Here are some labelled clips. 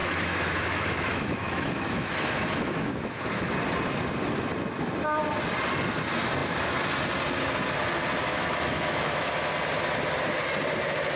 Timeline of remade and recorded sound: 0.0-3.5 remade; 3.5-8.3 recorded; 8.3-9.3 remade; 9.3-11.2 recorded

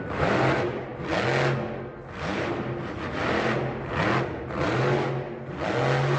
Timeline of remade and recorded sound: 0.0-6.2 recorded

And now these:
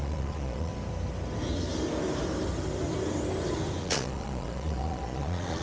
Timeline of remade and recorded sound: 0.0-0.7 remade; 0.7-3.8 recorded; 3.8-5.6 remade

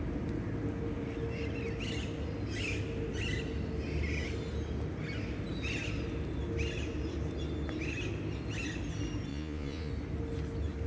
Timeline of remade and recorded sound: 0.0-9.3 recorded; 9.3-9.9 remade; 9.9-10.9 recorded